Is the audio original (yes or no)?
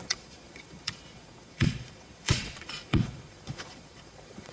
no